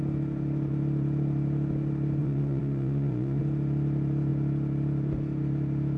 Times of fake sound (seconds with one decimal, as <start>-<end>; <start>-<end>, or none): 2.2-3.4